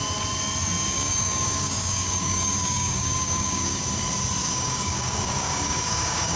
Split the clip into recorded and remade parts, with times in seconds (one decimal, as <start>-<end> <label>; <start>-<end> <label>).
0.0-0.8 recorded; 0.8-3.8 remade; 3.8-4.4 recorded; 4.4-6.4 remade